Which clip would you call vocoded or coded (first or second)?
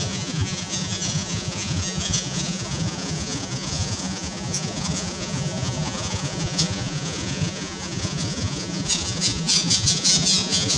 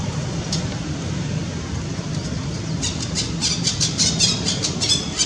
first